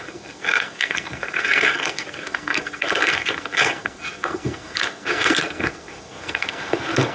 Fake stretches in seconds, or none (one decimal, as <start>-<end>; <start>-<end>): 0.0-7.1